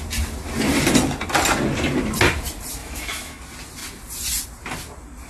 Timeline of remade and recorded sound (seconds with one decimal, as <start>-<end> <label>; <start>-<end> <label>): 0.0-2.8 recorded; 2.8-3.4 remade; 3.4-5.3 recorded